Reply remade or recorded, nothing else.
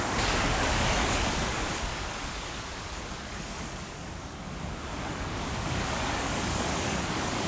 remade